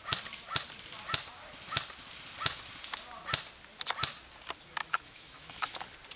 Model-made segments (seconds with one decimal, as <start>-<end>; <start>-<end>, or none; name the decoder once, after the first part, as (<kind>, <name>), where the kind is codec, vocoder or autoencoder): 4.8-5.8 (autoencoder, DAC-VAE)